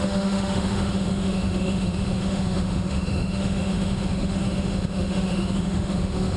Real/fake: fake